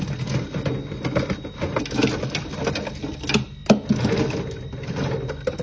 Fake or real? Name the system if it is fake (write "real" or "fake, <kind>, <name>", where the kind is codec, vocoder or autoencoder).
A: real